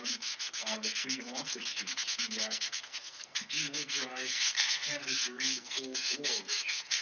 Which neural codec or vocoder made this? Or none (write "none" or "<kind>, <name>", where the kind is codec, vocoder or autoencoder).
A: codec, SNAC